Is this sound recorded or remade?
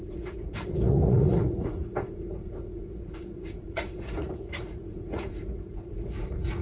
remade